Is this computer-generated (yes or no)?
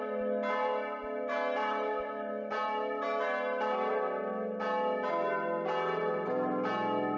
no